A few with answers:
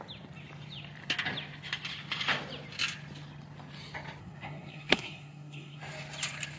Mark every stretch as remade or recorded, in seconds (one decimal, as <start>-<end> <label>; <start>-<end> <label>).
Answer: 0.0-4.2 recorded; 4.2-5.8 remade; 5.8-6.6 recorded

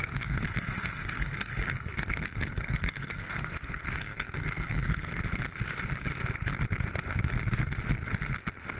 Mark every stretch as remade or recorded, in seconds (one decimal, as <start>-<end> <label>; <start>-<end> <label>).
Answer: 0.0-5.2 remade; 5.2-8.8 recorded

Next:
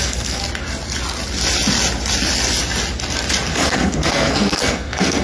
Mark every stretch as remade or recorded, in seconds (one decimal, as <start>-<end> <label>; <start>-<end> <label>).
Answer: 0.0-0.4 remade; 0.4-3.5 recorded; 3.5-5.2 remade

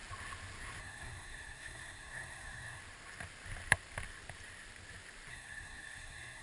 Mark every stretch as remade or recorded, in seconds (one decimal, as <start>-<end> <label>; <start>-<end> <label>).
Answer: 0.0-0.8 recorded; 0.8-2.8 remade; 2.8-5.3 recorded; 5.3-6.4 remade

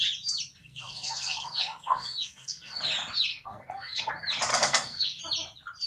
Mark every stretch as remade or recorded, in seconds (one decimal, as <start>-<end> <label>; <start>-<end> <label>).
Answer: 0.0-0.6 recorded; 0.6-2.8 remade; 2.8-3.3 recorded; 3.3-4.1 remade; 4.1-4.5 recorded; 4.5-5.2 remade; 5.2-5.9 recorded

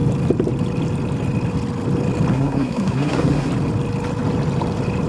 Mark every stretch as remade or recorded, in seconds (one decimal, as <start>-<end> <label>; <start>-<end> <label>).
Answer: 0.0-2.3 recorded; 2.3-3.5 remade; 3.5-5.1 recorded

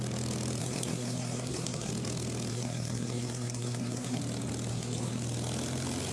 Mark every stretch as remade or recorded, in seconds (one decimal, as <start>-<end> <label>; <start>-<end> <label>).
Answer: 0.0-0.6 recorded; 0.6-1.9 remade; 1.9-2.5 recorded; 2.5-4.2 remade; 4.2-4.7 recorded; 4.7-5.2 remade; 5.2-6.1 recorded

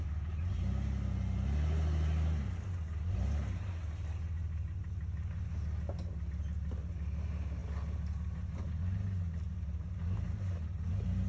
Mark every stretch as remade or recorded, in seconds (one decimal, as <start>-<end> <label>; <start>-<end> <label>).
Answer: 0.0-11.3 recorded